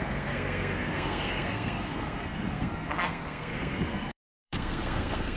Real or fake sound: fake